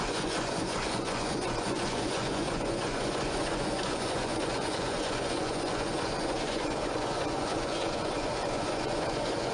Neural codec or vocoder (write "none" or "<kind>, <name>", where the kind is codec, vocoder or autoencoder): vocoder, Vocos